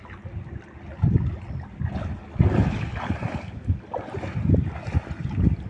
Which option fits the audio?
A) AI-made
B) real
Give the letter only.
B